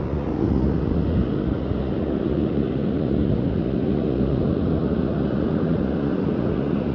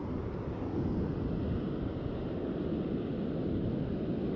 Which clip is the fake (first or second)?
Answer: first